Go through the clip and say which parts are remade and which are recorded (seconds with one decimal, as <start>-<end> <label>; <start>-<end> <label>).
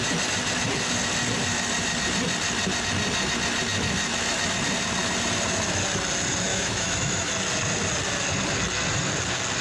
0.0-6.5 recorded; 6.5-7.3 remade; 7.3-9.6 recorded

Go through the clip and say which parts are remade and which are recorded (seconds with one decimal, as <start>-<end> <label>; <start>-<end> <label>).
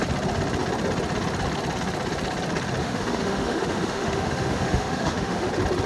0.0-2.8 recorded; 2.8-5.5 remade; 5.5-5.9 recorded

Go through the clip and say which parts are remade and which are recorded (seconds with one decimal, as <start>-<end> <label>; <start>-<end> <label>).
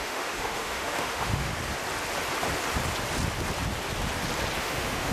0.0-1.5 remade; 1.5-4.6 recorded; 4.6-5.1 remade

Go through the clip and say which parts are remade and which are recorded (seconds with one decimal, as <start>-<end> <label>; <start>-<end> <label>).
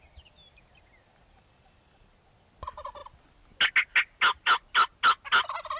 0.0-5.8 recorded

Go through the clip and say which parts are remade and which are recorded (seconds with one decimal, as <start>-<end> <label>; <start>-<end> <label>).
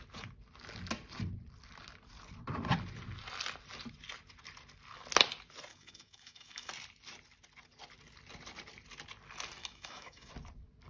0.0-5.7 recorded; 5.7-6.7 remade; 6.7-9.6 recorded; 9.6-10.3 remade; 10.3-10.9 recorded